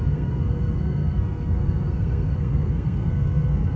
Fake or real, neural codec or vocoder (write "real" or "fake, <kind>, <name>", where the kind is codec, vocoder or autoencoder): fake, codec, SNAC